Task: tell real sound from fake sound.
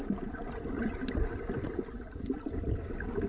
real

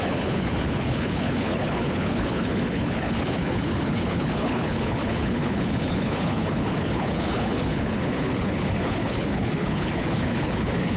fake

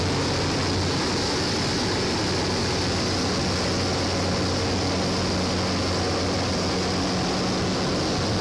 real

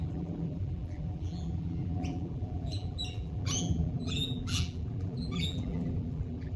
fake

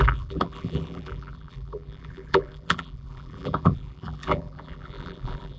fake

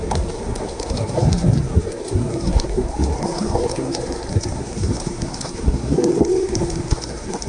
fake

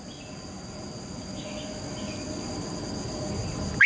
real